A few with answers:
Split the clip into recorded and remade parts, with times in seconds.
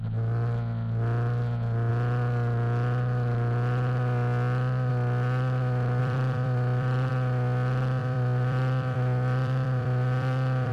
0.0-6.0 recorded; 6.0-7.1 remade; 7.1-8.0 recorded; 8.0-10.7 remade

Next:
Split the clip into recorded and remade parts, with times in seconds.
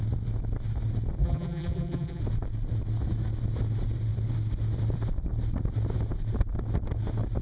0.0-1.2 recorded; 1.2-2.2 remade; 2.2-7.4 recorded